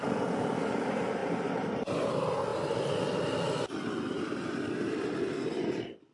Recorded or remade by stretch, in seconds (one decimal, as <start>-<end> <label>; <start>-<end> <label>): 0.0-1.2 recorded; 1.2-1.7 remade; 1.7-6.1 recorded

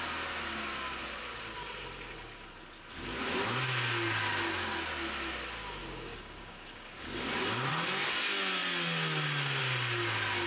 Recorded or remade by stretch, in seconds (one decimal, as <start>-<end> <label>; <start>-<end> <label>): 0.0-5.8 recorded; 5.8-7.7 remade; 7.7-10.5 recorded